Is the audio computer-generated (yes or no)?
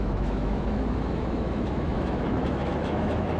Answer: yes